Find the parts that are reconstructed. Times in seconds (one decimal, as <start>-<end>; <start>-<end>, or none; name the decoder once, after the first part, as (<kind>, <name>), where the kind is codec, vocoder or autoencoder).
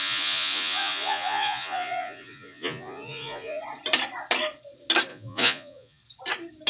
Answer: 0.0-3.6 (vocoder, Vocos); 5.1-6.0